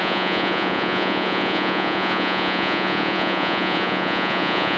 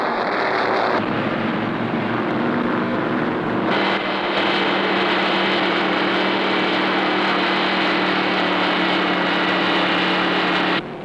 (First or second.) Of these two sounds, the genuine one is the second